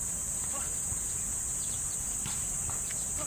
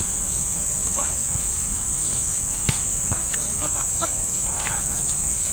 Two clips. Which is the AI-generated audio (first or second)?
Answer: second